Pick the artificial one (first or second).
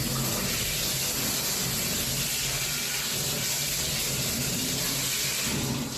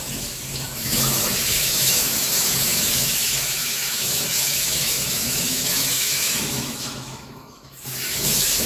second